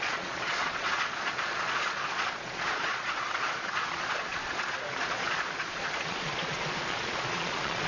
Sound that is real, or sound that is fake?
fake